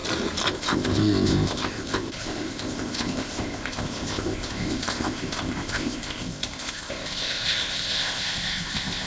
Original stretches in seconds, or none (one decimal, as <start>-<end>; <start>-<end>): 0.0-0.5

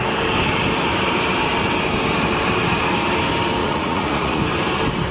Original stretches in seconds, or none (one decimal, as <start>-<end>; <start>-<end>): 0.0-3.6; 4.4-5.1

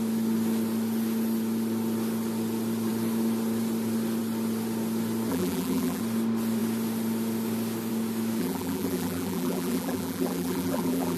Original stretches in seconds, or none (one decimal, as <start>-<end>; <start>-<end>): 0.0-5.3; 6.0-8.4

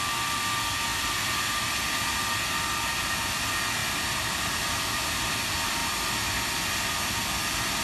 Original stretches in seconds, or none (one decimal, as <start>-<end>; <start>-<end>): 0.0-7.8

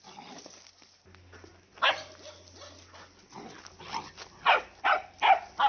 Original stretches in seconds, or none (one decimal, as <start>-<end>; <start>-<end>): 0.0-5.7

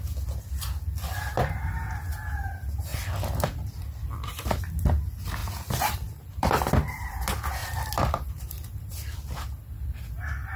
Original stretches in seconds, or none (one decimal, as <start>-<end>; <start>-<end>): 0.0-2.9; 4.9-5.4; 7.1-7.6; 8.8-10.6

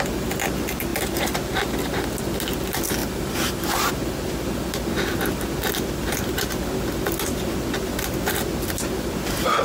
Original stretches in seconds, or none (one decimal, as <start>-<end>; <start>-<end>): 0.0-3.0; 3.9-9.6

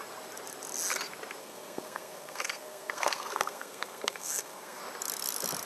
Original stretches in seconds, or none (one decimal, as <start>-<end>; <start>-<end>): 0.0-1.4; 4.8-5.7